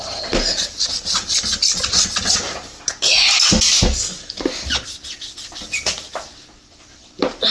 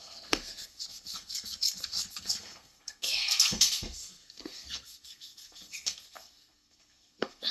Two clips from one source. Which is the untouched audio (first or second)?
first